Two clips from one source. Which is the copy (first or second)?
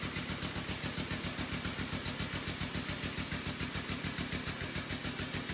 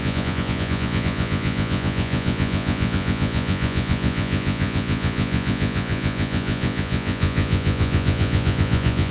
second